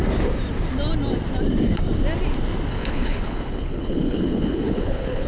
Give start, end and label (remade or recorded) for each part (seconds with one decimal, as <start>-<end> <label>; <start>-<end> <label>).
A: 0.0-2.7 recorded; 2.7-5.3 remade